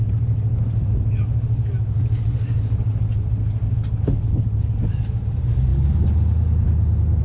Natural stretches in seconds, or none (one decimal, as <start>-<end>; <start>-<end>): 0.0-7.2